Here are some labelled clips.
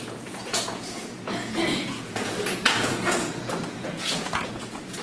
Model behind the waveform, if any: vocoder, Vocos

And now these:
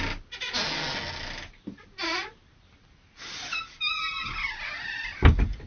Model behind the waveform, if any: none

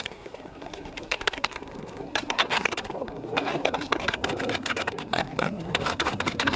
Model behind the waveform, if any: codec, SNAC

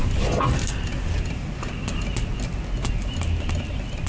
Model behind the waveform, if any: none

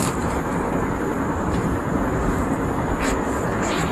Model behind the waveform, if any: vocoder, BigVGAN v2